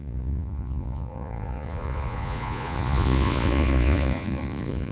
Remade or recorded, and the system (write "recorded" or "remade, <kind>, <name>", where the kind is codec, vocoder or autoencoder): remade, vocoder, Vocos